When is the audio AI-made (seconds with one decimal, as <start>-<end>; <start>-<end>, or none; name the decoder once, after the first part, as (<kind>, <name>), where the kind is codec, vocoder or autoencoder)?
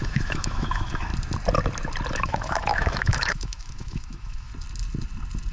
0.0-1.1 (autoencoder, DAC-VAE); 2.1-4.5